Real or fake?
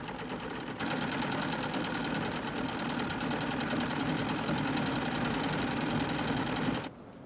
real